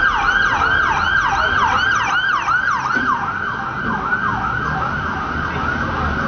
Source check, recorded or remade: recorded